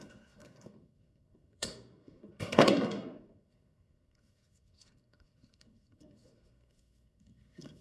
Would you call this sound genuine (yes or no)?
no